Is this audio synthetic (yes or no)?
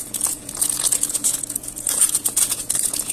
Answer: yes